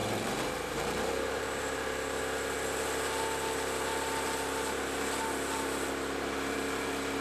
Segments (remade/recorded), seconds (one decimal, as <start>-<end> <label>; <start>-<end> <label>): 0.0-2.2 remade; 2.2-7.2 recorded